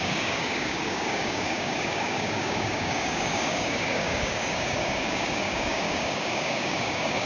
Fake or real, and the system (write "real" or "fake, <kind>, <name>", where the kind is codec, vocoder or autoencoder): fake, codec, DAC